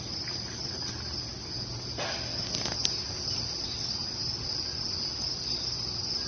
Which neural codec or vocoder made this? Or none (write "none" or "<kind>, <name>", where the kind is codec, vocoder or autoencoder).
none